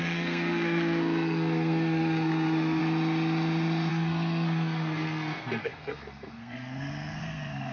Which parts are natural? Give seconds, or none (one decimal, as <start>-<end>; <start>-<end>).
2.8-3.9

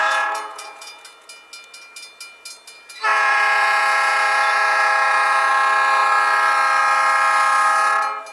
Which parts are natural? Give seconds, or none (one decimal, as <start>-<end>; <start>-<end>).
0.9-3.1; 5.5-8.3

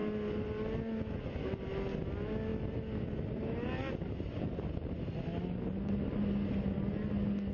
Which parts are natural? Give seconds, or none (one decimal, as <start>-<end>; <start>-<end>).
0.0-7.5